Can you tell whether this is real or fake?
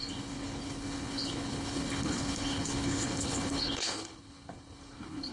fake